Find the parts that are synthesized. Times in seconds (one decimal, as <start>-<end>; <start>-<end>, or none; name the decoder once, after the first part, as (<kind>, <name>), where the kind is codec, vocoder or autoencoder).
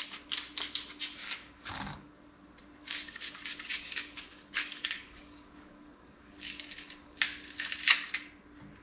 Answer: 1.2-2.1 (codec, DAC); 2.8-7.2